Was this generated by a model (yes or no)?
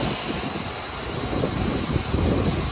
no